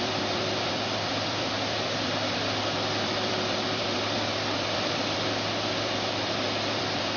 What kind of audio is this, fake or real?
fake